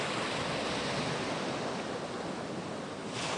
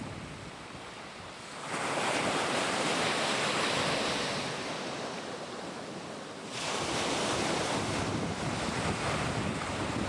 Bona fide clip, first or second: first